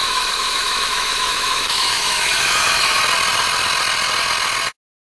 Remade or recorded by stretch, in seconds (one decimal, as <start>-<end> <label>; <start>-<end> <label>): 0.0-3.0 remade; 3.0-5.0 recorded